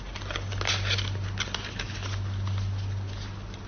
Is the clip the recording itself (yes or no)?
yes